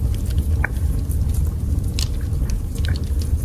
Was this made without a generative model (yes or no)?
yes